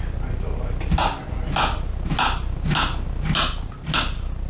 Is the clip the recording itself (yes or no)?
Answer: yes